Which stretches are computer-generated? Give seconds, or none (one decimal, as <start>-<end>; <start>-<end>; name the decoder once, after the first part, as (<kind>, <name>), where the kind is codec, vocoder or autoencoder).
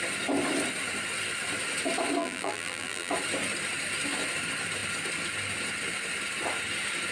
2.2-3.1 (vocoder, BigVGAN v2)